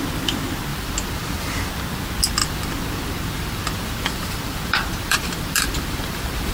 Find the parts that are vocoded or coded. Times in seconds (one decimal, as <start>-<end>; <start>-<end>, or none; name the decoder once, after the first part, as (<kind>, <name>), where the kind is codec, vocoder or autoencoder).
0.7-1.7 (vocoder, BigVGAN v2); 2.4-6.5